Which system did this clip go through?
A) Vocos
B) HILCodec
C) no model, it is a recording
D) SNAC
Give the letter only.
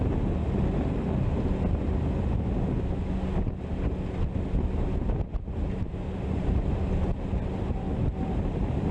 C